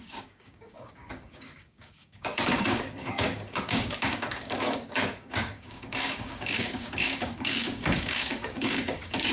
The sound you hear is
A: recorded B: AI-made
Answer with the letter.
B